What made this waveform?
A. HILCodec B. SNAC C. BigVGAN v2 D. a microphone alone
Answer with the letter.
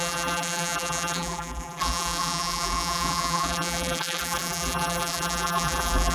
C